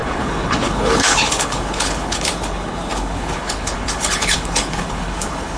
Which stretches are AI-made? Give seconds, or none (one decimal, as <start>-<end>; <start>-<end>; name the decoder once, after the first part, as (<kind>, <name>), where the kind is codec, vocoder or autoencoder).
0.0-5.6 (codec, HILCodec)